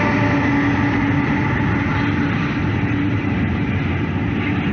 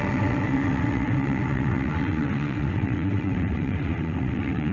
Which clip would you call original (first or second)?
first